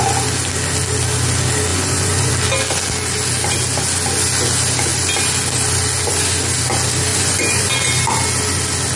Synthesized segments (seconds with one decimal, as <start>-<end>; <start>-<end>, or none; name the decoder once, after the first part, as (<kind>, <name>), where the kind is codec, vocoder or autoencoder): 1.7-2.3 (vocoder, Vocos); 7.1-7.7